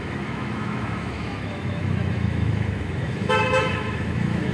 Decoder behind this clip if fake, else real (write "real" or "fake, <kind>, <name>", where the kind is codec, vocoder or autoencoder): fake, autoencoder, DAC-VAE